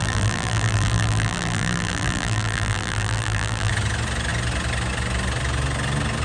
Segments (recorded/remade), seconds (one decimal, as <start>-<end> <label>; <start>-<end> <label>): 0.0-3.7 remade; 3.7-6.2 recorded